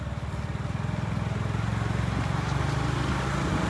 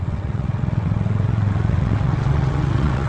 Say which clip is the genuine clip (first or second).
first